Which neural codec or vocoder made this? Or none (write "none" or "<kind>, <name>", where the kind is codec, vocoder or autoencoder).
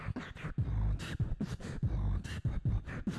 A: none